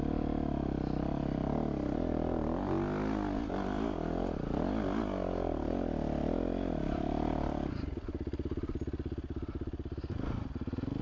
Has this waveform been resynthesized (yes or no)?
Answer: no